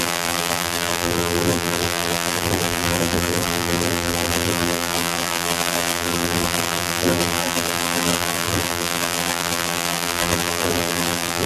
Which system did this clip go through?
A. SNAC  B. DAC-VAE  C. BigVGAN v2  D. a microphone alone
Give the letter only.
C